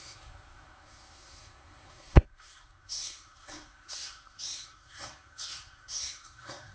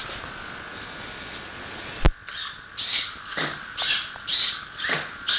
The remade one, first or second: first